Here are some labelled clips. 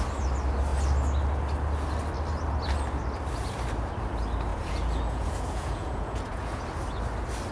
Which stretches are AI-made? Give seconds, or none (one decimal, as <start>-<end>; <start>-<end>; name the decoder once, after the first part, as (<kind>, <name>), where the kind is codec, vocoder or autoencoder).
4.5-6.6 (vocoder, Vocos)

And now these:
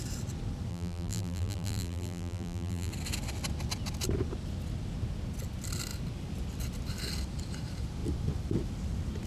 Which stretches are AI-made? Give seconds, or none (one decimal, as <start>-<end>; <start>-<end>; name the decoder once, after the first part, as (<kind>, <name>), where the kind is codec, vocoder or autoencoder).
0.7-2.9 (vocoder, BigVGAN v2)

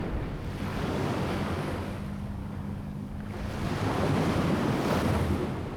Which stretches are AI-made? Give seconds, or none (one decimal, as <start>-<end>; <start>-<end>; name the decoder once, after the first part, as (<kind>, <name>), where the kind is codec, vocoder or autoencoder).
0.7-1.9 (codec, DAC); 2.4-3.5

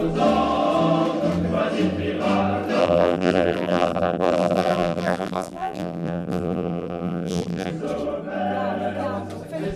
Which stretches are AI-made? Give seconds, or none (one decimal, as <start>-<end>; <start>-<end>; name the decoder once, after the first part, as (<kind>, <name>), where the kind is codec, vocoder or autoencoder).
2.8-7.7 (vocoder, BigVGAN v2)